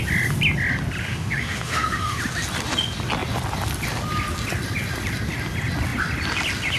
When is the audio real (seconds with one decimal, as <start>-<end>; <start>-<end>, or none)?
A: 0.0-1.0; 2.2-6.8